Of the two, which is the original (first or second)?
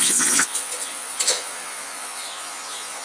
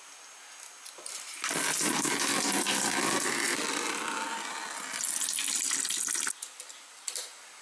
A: second